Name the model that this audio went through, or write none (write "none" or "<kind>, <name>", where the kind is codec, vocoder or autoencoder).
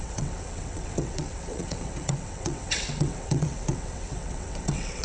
vocoder, WaveNeXt